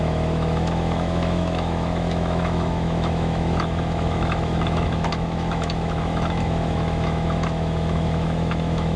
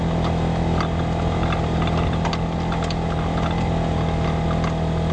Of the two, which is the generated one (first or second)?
first